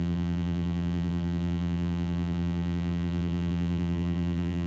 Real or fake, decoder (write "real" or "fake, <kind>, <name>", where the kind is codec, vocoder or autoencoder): fake, vocoder, BigVGAN v2